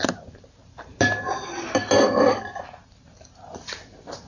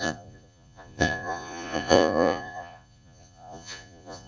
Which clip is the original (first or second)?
first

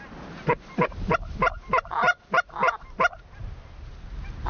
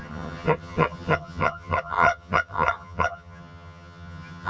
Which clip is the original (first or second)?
first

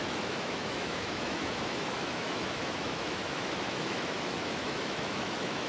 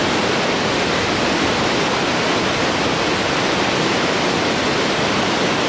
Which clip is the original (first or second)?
second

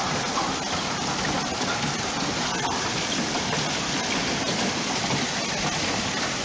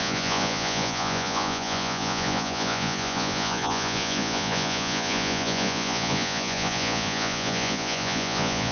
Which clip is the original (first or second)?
first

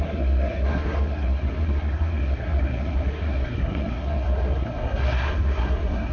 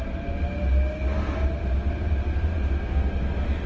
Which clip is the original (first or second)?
second